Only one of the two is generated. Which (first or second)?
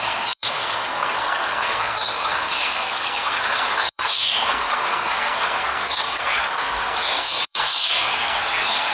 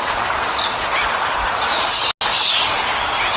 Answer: first